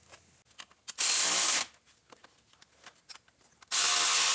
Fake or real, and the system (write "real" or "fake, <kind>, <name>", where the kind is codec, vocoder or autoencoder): real